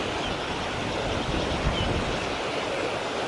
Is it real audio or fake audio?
real